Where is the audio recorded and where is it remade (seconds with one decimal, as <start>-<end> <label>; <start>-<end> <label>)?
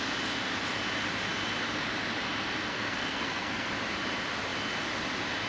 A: 0.0-2.7 recorded; 2.7-3.7 remade; 3.7-5.5 recorded